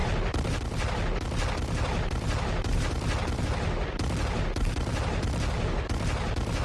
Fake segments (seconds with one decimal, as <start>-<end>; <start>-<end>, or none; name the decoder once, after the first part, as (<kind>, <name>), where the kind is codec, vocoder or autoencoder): none